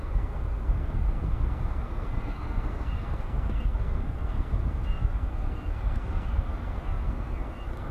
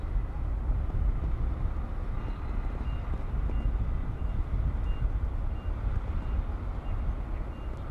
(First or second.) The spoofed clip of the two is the first